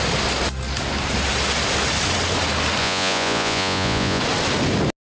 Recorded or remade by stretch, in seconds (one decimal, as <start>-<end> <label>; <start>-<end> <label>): 0.0-2.8 recorded; 2.8-4.2 remade; 4.2-5.0 recorded

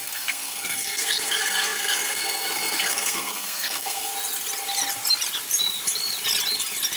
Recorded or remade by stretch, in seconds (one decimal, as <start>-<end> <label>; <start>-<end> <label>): 0.0-4.1 remade; 4.1-7.0 recorded

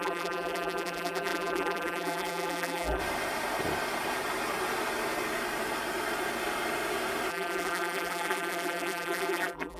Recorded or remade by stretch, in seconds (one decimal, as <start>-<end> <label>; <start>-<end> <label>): 0.0-3.0 remade; 3.0-7.3 recorded; 7.3-9.8 remade

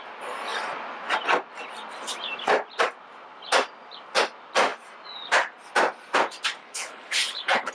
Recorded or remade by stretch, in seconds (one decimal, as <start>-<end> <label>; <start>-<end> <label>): 0.0-6.6 recorded; 6.6-7.7 remade

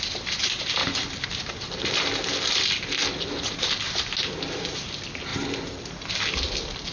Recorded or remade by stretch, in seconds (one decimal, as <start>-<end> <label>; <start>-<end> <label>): 0.0-5.3 recorded; 5.3-6.1 remade; 6.1-6.9 recorded

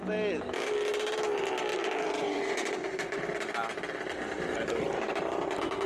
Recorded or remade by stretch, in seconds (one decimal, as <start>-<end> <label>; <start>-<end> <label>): 0.0-1.7 recorded; 1.7-2.7 remade; 2.7-5.9 recorded

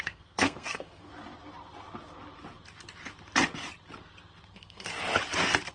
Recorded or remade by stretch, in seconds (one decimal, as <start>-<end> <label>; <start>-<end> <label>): 0.0-1.1 remade; 1.1-4.5 recorded; 4.5-4.9 remade; 4.9-5.7 recorded

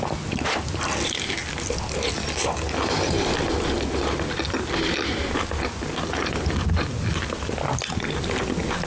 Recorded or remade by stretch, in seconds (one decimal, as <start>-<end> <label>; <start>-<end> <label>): 0.0-8.9 recorded